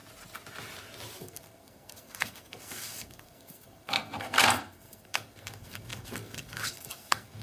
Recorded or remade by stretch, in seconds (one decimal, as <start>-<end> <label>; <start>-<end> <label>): 0.0-1.2 recorded; 1.2-7.4 remade